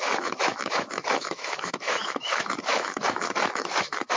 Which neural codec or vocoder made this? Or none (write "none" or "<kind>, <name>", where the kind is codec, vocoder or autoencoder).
autoencoder, DAC-VAE